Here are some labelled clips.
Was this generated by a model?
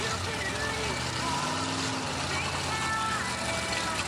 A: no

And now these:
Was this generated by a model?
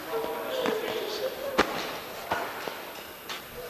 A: no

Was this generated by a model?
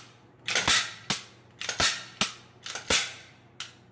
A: no